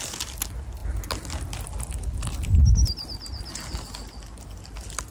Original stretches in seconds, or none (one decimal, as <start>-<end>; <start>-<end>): 0.0-5.1